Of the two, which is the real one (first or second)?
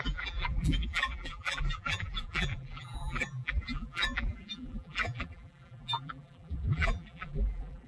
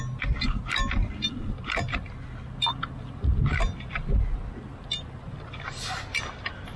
second